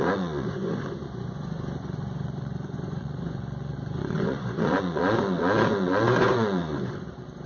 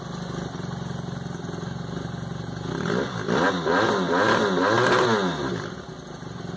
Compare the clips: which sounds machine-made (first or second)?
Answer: first